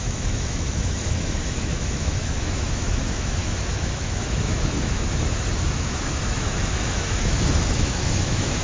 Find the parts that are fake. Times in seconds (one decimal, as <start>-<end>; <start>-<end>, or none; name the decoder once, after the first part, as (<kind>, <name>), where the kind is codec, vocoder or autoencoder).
0.0-8.6 (autoencoder, DAC-VAE)